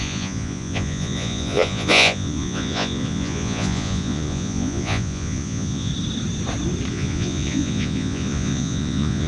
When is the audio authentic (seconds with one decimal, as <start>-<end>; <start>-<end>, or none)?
5.9-6.9